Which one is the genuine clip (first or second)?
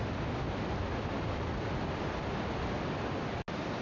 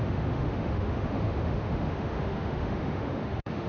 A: first